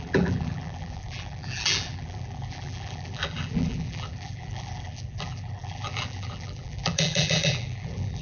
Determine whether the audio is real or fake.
fake